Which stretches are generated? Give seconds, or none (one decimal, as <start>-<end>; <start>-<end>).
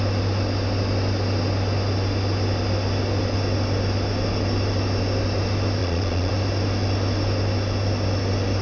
5.8-6.3